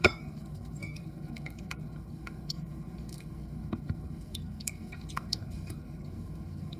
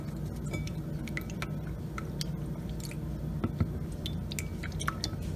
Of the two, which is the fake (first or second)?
first